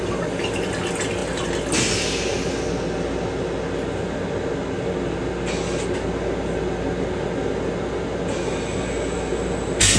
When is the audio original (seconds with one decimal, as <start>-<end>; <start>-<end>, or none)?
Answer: 0.0-10.0